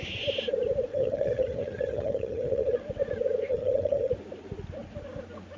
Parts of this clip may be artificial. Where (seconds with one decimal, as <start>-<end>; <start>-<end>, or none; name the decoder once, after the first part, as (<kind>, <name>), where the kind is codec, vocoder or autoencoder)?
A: 0.9-2.8 (vocoder, HiFi-GAN); 3.5-4.1